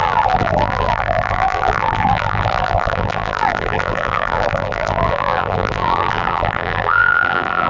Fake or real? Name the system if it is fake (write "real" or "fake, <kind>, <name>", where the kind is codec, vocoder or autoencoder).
fake, vocoder, BigVGAN v2